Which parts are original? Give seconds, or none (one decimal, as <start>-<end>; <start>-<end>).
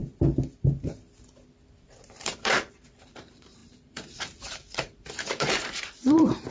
0.0-2.2